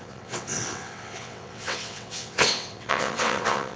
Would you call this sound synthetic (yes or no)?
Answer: yes